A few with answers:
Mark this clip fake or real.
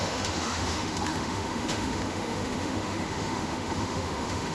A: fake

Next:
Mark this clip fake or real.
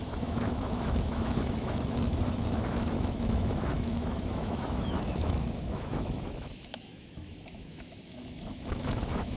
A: fake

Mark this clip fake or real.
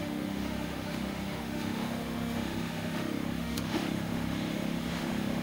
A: fake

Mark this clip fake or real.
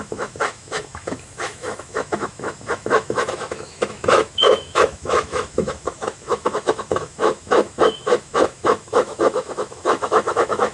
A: fake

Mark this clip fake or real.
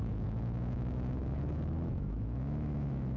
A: fake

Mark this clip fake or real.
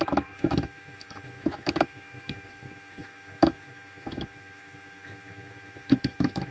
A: fake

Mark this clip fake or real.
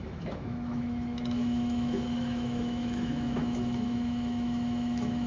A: fake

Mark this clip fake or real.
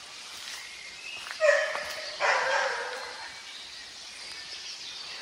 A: real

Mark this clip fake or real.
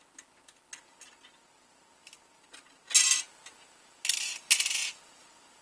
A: real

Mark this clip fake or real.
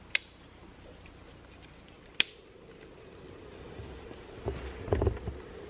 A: real